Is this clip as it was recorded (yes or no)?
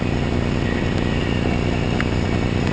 yes